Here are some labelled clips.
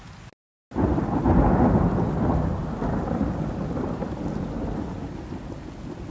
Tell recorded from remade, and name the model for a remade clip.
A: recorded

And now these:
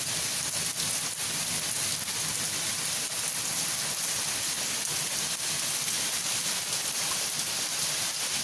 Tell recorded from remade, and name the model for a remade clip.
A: recorded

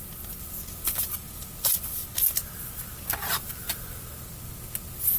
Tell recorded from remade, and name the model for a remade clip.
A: recorded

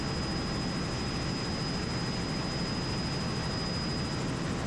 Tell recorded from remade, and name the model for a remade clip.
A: recorded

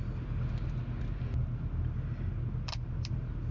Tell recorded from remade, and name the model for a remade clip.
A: recorded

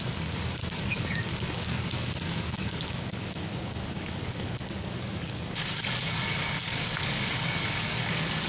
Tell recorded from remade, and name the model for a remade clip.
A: remade, codec, DAC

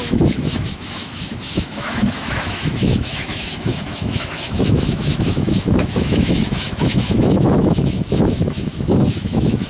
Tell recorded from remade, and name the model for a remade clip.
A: remade, autoencoder, DAC-VAE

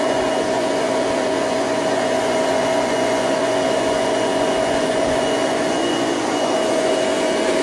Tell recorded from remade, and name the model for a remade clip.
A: remade, vocoder, Vocos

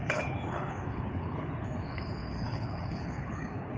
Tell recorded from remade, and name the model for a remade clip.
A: remade, codec, HILCodec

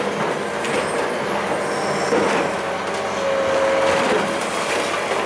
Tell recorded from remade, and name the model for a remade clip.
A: recorded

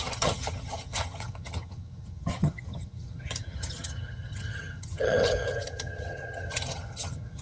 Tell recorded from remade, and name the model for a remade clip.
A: remade, vocoder, HiFi-GAN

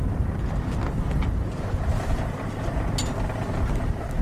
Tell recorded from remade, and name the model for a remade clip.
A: recorded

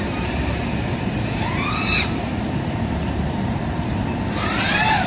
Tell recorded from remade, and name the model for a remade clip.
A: remade, vocoder, BigVGAN v2